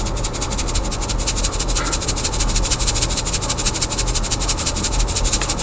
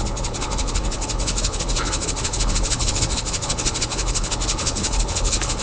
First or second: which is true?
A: first